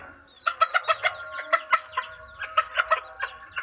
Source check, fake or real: real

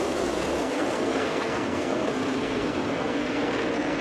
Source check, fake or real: fake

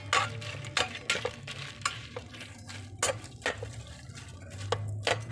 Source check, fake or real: real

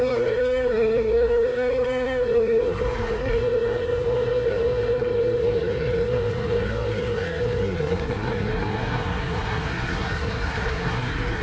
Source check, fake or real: fake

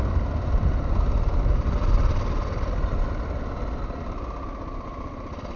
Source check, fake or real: real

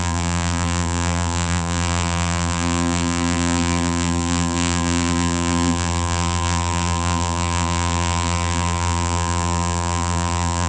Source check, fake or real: fake